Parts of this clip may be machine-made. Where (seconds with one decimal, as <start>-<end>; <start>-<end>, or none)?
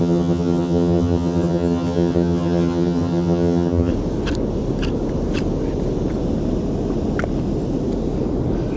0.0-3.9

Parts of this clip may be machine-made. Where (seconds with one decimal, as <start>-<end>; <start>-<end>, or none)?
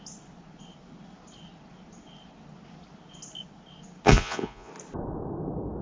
4.1-4.7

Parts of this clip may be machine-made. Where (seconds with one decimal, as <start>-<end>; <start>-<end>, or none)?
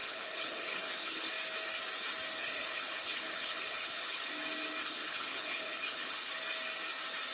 0.0-1.3; 2.4-4.3; 4.8-6.3